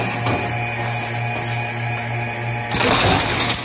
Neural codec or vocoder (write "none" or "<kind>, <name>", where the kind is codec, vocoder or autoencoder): none